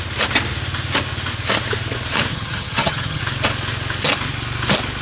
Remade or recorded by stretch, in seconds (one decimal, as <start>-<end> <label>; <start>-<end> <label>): 0.0-2.3 recorded; 2.3-3.2 remade; 3.2-5.0 recorded